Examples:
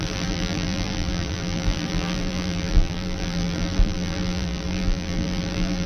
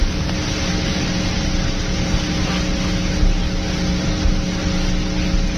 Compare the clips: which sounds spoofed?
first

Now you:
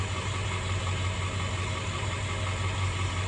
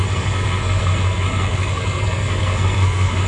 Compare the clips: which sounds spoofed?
second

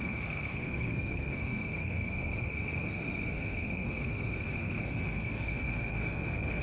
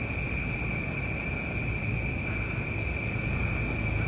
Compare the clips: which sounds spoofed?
first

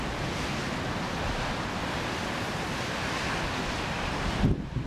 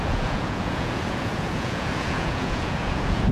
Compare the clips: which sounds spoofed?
second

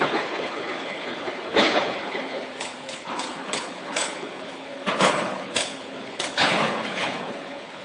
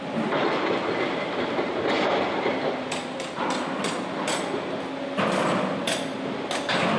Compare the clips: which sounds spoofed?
first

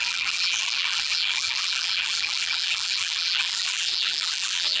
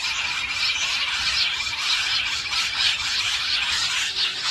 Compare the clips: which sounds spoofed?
first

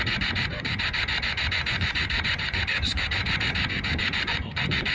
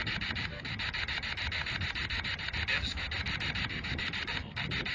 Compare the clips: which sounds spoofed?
first